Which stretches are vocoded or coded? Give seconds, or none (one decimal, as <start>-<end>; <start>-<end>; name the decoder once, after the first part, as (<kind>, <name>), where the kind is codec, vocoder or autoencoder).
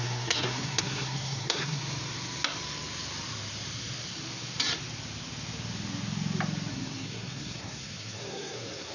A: 0.0-1.8 (codec, SNAC); 6.7-8.9